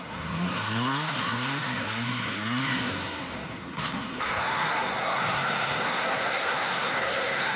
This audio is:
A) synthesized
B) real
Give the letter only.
A